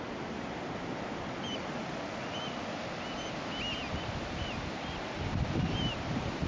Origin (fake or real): real